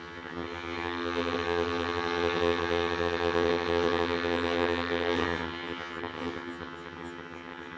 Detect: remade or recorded remade